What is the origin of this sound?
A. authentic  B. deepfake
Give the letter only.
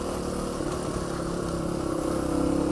A